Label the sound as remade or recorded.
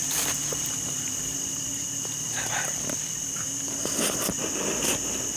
recorded